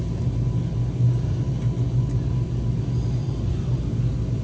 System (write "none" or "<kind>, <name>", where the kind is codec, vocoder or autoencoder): none